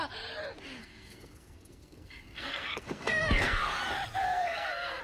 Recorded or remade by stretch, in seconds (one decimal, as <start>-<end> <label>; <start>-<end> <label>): 0.0-0.8 recorded; 0.8-3.8 remade; 3.8-4.2 recorded; 4.2-5.0 remade